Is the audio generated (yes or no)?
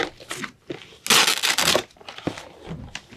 no